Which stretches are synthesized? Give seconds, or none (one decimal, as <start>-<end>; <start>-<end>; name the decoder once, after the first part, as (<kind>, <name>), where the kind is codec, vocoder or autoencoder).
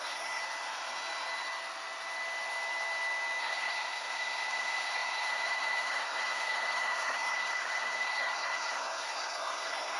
0.0-0.4 (codec, SNAC); 3.4-10.0